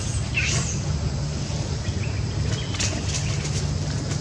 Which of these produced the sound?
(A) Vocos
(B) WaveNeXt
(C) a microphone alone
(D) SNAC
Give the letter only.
C